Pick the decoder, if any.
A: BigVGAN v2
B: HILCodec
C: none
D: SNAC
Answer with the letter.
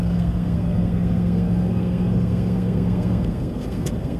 D